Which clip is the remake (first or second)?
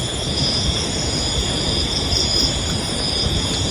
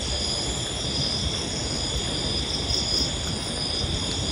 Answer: first